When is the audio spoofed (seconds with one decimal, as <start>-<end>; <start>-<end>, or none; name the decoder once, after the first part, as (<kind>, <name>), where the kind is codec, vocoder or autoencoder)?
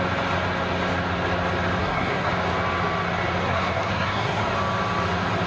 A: 1.8-2.3 (codec, SNAC); 3.4-4.4